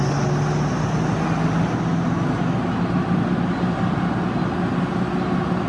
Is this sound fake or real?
real